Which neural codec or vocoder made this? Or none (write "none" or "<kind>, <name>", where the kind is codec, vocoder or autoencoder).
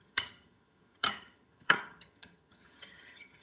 vocoder, HiFi-GAN